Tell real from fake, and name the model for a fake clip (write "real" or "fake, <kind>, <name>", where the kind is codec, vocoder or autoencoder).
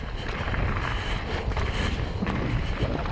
real